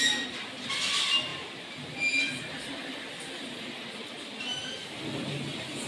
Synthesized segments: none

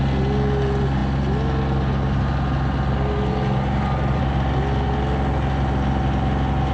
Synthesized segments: none

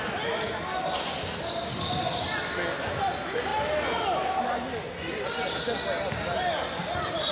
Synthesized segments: none

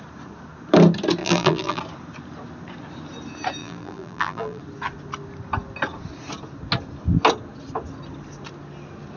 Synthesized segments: 1.2-1.8 (vocoder, BigVGAN v2); 3.6-4.6